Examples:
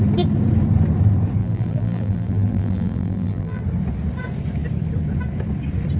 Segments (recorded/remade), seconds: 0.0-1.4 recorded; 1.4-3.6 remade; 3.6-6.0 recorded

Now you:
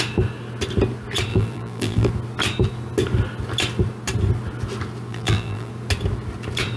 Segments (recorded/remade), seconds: 0.0-1.3 recorded; 1.3-2.1 remade; 2.1-5.1 recorded; 5.1-5.7 remade; 5.7-6.8 recorded

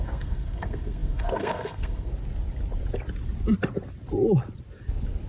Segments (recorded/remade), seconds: 0.0-2.1 remade; 2.1-5.3 recorded